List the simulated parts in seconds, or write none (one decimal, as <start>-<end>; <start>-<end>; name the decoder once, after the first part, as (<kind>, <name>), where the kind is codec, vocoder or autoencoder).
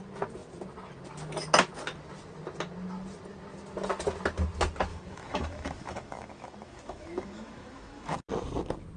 4.9-8.3 (autoencoder, DAC-VAE)